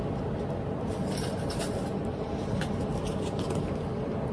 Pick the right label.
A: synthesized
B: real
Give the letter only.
B